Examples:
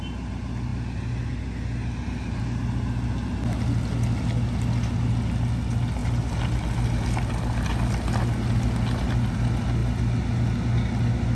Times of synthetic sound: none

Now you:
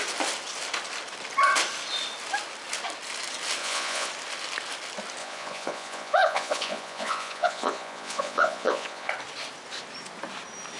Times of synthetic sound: 3.6-4.1 (vocoder, Vocos); 5.2-9.1

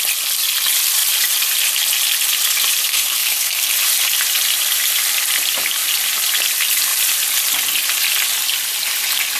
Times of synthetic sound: 2.9-3.7 (codec, SNAC)

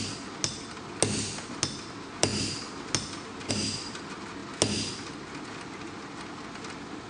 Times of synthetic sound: none

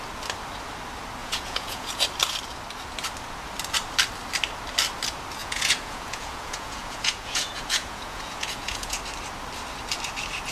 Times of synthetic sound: 1.2-2.0 (vocoder, Vocos); 5.4-9.0

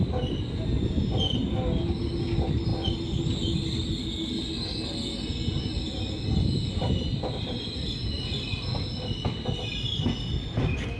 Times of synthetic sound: none

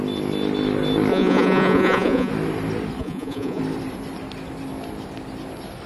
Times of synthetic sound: 1.1-2.3 (vocoder, Vocos); 3.0-3.6

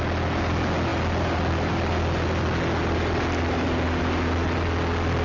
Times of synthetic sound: none